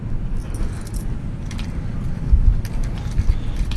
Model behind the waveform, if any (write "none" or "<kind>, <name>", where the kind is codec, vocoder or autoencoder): none